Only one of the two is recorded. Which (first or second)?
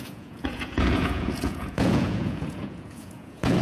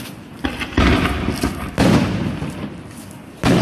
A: second